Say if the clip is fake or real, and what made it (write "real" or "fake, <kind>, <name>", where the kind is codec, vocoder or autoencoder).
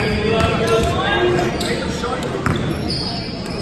real